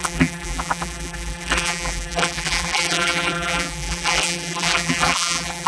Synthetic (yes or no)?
yes